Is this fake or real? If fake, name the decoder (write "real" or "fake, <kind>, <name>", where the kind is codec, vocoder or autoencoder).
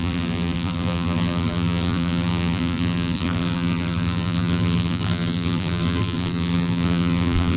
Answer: fake, vocoder, BigVGAN v2